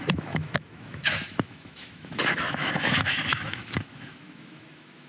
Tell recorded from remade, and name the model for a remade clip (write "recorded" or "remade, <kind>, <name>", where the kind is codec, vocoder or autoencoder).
remade, autoencoder, DAC-VAE